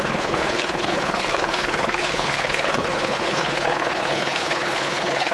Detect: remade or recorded remade